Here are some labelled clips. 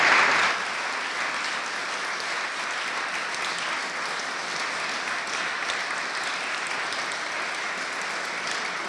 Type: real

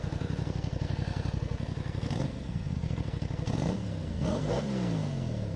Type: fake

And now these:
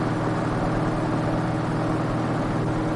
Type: real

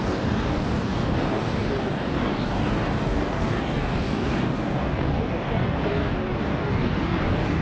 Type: fake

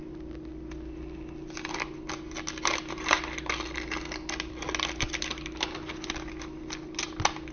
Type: real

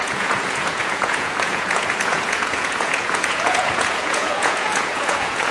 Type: fake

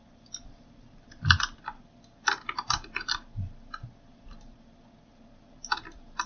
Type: real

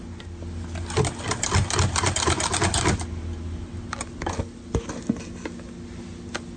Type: real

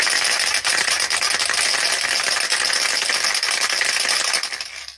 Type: real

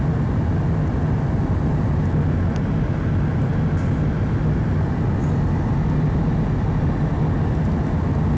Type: real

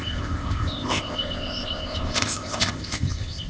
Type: fake